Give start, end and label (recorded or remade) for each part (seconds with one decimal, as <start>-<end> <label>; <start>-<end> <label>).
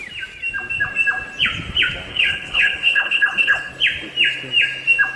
0.0-2.1 recorded; 2.1-3.7 remade; 3.7-5.2 recorded